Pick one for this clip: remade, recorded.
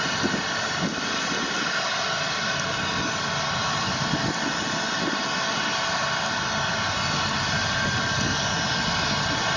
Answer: recorded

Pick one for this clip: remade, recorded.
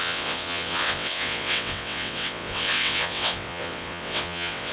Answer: remade